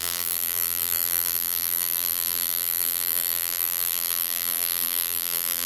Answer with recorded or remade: remade